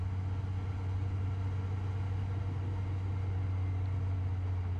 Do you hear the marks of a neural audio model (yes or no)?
no